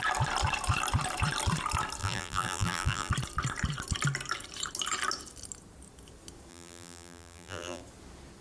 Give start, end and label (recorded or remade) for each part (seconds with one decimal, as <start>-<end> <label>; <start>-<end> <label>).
0.0-2.0 recorded; 2.0-3.1 remade; 3.1-6.5 recorded; 6.5-7.8 remade; 7.8-8.4 recorded